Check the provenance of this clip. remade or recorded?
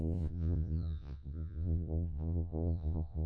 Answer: remade